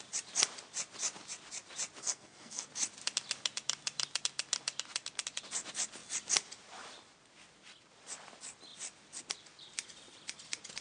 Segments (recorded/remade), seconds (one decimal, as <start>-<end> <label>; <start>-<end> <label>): 0.0-2.0 recorded; 2.0-2.7 remade; 2.7-10.8 recorded